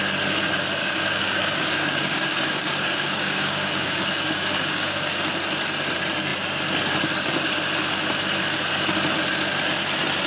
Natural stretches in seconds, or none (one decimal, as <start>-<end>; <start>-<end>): 0.0-0.8; 5.1-10.3